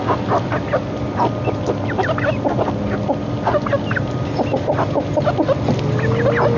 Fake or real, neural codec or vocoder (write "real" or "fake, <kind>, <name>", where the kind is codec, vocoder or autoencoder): real